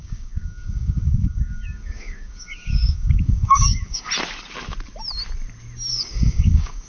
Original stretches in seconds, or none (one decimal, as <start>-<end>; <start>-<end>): 4.1-5.9